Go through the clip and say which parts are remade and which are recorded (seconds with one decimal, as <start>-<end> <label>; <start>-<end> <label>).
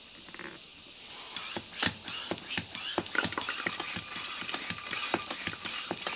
0.0-6.2 recorded